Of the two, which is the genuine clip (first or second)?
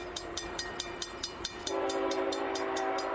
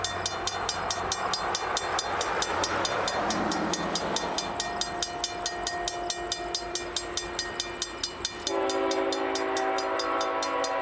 second